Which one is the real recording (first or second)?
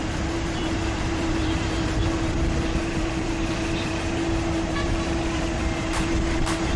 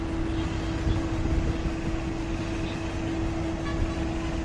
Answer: second